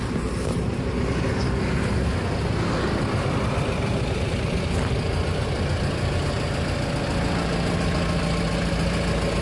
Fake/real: real